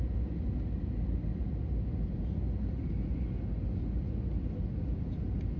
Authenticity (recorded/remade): recorded